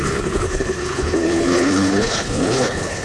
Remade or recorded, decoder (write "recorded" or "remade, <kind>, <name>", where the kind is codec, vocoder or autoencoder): remade, codec, HILCodec